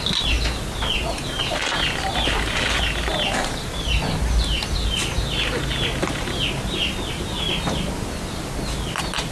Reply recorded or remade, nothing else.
recorded